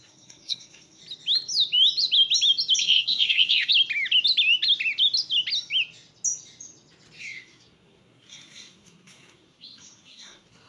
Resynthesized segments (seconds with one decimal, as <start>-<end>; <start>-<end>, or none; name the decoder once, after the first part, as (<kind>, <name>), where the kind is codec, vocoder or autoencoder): 0.0-1.0 (codec, SNAC); 2.8-3.7; 7.2-10.7